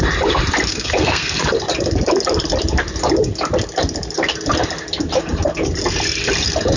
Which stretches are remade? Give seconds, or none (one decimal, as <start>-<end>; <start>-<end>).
0.7-1.4